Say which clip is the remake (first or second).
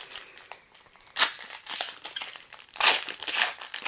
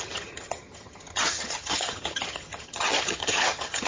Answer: second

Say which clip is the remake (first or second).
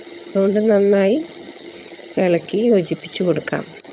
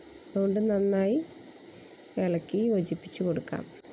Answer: first